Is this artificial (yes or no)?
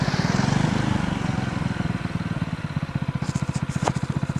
no